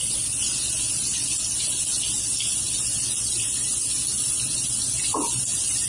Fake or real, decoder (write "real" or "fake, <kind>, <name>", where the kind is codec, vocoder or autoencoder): real